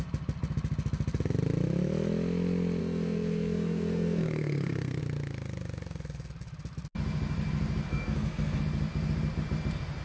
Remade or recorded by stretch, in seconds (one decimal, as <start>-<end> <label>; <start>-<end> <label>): 0.0-2.8 recorded; 2.8-5.0 remade; 5.0-7.9 recorded; 7.9-8.6 remade; 8.6-10.0 recorded